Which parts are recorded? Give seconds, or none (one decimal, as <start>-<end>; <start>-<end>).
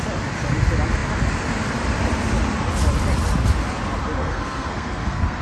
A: 0.0-4.2